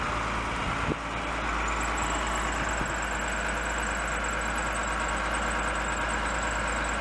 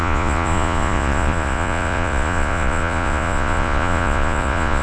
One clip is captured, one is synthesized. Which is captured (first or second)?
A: first